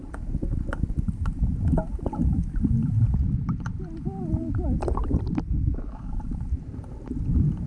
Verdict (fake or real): real